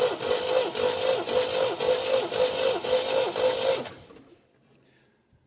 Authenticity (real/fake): real